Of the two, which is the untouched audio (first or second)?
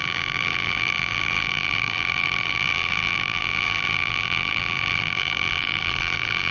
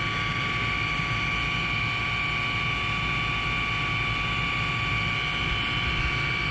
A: second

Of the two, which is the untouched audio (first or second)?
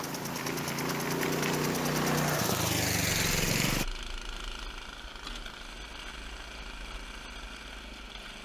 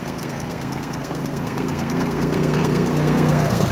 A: first